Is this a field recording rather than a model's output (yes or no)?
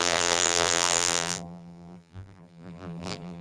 no